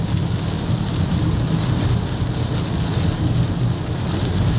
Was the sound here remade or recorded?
recorded